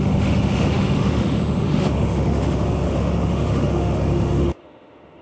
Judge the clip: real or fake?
fake